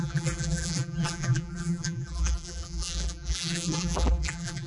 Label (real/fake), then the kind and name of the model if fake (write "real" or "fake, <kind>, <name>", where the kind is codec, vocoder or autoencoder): fake, vocoder, BigVGAN v2